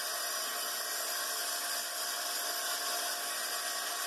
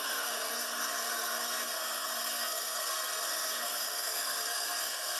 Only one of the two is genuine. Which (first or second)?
first